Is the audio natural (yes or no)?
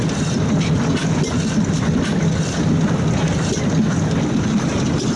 yes